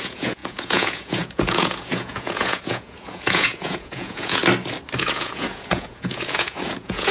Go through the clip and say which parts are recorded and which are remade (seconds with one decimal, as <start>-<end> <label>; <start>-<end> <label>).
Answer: 0.0-4.4 remade; 4.4-5.0 recorded; 5.0-7.1 remade